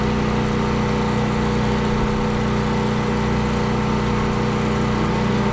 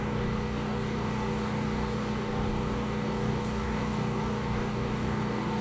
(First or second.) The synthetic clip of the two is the second